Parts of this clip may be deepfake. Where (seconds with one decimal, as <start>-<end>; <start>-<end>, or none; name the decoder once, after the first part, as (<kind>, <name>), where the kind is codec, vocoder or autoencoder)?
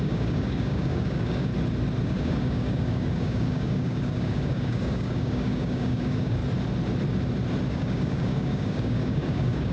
0.0-1.5 (codec, DAC); 2.0-6.4; 7.7-9.7